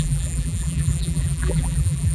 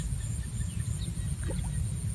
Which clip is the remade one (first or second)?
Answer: first